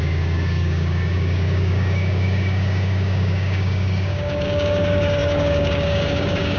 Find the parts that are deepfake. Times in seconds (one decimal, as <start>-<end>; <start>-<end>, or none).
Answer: 0.0-6.6